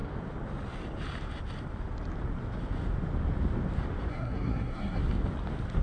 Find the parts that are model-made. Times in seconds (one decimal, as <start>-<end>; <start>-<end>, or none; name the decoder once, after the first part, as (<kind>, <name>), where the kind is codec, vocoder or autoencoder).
4.1-5.0 (codec, SNAC)